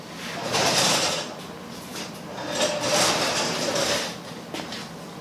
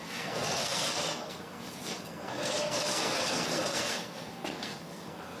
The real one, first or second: first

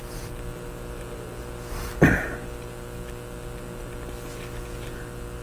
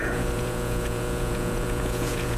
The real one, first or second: first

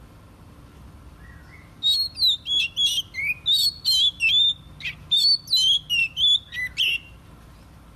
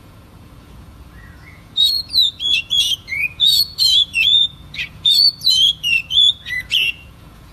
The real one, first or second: first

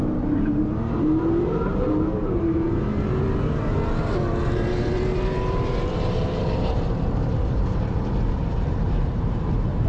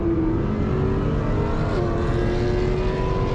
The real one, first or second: second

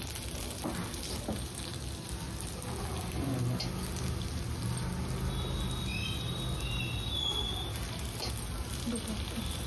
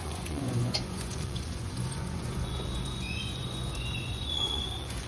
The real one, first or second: first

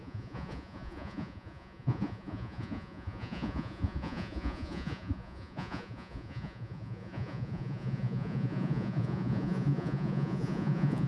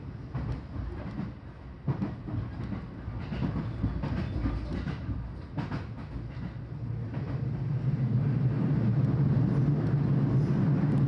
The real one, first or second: second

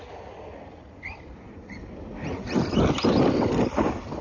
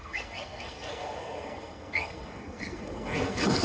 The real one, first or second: first